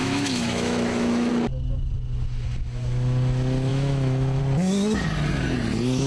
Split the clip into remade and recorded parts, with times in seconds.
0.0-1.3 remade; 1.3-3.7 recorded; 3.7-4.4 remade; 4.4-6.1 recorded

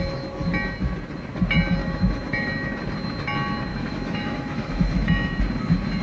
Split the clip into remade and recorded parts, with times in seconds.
0.0-1.8 recorded; 1.8-2.5 remade; 2.5-3.7 recorded; 3.7-5.4 remade; 5.4-6.0 recorded

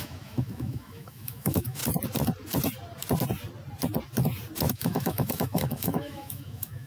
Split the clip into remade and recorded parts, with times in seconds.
0.0-1.8 remade; 1.8-4.7 recorded; 4.7-6.9 remade

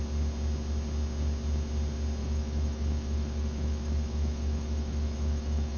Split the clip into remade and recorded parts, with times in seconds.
0.0-2.2 recorded; 2.2-5.8 remade

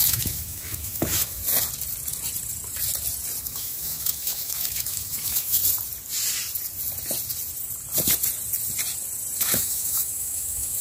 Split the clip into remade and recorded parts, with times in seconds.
0.0-1.4 remade; 1.4-3.4 recorded; 3.4-5.6 remade; 5.6-9.4 recorded; 9.4-10.8 remade

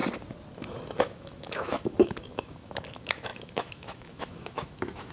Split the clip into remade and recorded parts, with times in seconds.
0.0-1.0 recorded; 1.0-5.1 remade